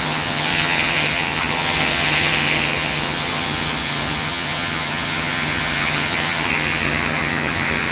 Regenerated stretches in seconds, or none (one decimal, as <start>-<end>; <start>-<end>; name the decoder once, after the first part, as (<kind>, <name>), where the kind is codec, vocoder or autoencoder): 0.0-7.9 (vocoder, HiFi-GAN)